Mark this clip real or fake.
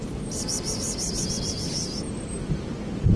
real